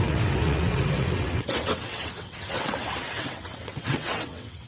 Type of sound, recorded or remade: remade